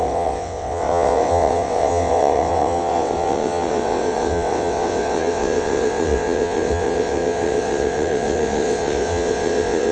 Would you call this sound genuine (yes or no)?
no